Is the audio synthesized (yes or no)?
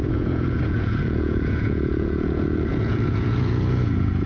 yes